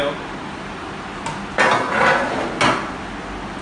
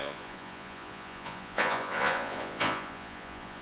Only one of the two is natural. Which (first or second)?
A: first